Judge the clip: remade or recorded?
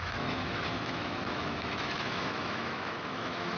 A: remade